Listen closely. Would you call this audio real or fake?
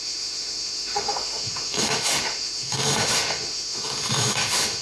fake